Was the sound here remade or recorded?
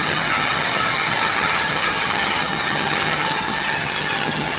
remade